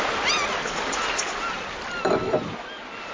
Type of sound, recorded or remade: recorded